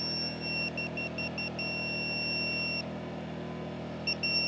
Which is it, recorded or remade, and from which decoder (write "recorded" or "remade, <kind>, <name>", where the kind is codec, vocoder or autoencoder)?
recorded